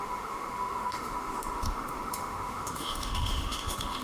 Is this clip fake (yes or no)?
yes